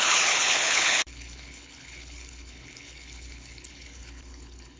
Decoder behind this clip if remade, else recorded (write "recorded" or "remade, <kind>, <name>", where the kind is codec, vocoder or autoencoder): remade, codec, HILCodec